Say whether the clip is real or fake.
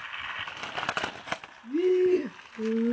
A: real